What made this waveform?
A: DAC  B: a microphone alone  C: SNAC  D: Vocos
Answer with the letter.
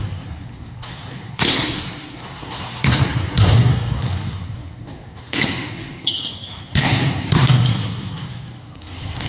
C